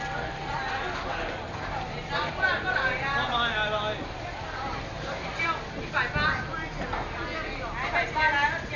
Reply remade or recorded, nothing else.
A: recorded